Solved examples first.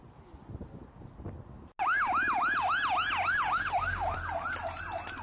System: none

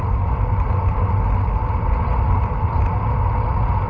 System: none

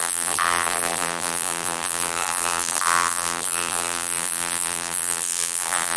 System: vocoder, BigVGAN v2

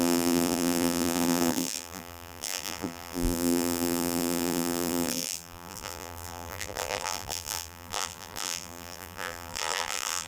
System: vocoder, BigVGAN v2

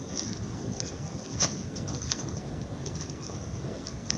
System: codec, SNAC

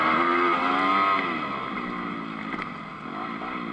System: none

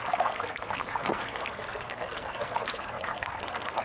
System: codec, SNAC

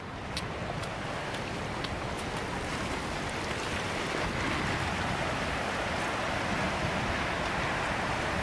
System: none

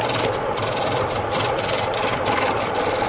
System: none